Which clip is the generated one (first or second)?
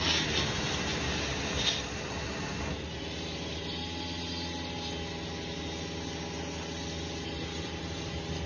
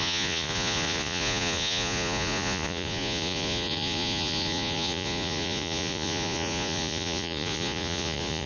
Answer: second